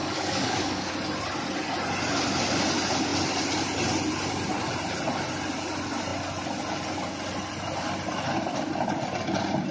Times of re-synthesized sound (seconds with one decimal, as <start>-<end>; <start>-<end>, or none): 0.0-0.9